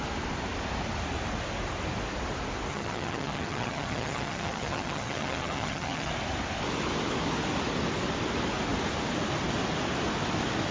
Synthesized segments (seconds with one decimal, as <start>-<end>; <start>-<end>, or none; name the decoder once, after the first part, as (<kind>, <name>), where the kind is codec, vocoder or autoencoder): 2.7-6.1 (vocoder, HiFi-GAN)